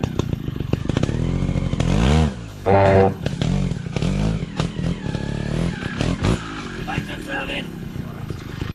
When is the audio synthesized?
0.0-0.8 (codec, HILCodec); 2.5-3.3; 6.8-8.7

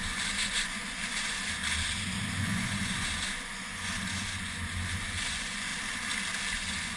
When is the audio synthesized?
0.0-1.6 (vocoder, Vocos); 2.3-5.7; 6.5-7.0

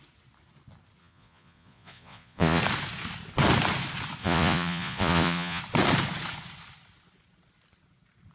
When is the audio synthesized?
1.0-2.6 (vocoder, Vocos); 4.2-5.6

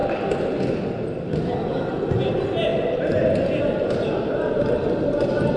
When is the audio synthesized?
none